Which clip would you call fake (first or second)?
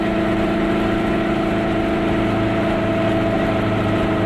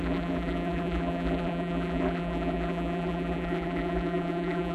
second